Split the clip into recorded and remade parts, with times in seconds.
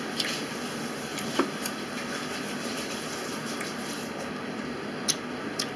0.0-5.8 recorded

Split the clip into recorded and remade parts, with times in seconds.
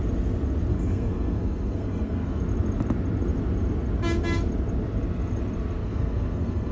0.0-0.7 recorded; 0.7-2.4 remade; 2.4-5.8 recorded; 5.8-6.7 remade